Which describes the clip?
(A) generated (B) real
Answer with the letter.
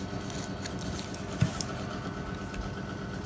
B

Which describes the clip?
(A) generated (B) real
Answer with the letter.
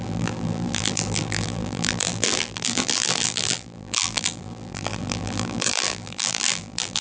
A